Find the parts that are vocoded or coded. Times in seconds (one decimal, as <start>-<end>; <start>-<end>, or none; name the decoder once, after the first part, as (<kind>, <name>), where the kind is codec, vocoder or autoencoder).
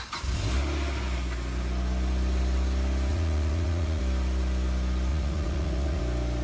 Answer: 3.1-4.0 (vocoder, Vocos); 5.1-6.0